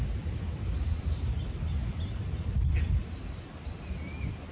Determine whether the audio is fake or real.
real